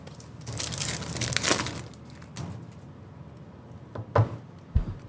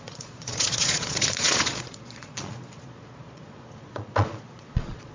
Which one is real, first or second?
first